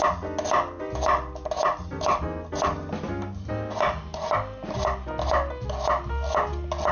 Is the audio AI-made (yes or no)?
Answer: no